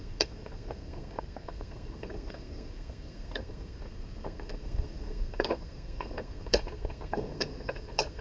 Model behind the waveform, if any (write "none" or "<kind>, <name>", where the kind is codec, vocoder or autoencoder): codec, SNAC